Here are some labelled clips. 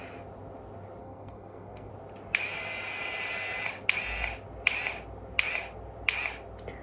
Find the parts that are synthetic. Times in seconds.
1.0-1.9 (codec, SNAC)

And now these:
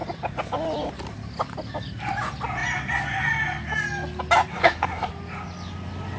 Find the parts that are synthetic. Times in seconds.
4.5-5.1 (codec, SNAC)

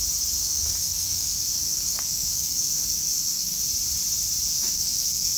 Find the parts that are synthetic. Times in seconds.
0.4-3.6 (codec, SNAC); 4.5-5.4

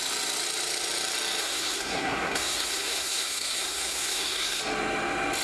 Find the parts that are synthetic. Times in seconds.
1.4-4.6 (codec, SNAC)